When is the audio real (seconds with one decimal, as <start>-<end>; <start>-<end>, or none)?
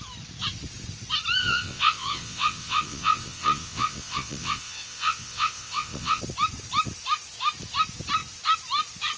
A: 0.0-1.4; 6.2-9.2